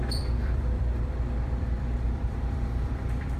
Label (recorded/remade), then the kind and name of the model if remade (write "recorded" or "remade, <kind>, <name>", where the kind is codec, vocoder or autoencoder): remade, vocoder, BigVGAN v2